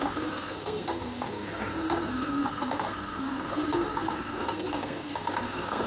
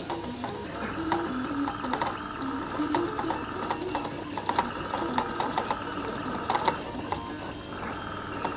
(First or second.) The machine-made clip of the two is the first